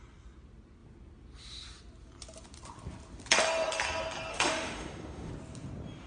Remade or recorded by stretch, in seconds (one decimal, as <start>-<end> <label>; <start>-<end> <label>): 0.0-4.3 recorded; 4.3-5.3 remade; 5.3-6.1 recorded